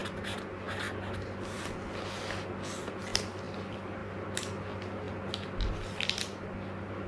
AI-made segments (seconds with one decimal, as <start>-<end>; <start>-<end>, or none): none